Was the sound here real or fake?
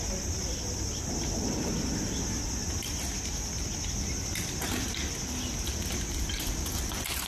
real